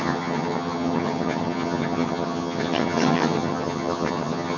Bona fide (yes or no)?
no